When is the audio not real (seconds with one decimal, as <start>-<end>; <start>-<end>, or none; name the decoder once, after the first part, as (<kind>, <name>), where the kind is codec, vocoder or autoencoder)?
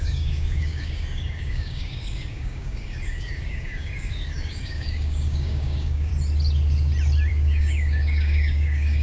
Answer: 0.0-6.1 (codec, DAC); 7.3-9.0